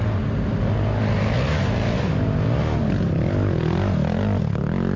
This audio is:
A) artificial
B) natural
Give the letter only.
B